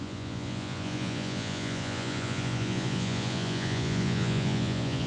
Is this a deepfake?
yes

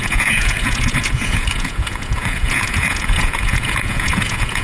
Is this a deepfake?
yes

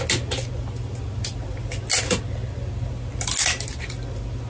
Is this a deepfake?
no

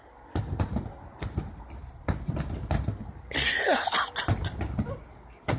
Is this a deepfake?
no